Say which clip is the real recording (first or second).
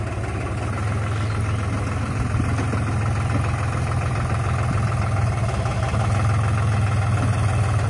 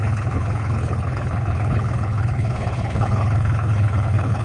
first